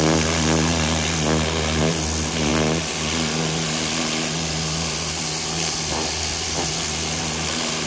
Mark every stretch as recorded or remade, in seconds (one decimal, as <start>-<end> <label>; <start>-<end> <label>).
0.0-7.9 recorded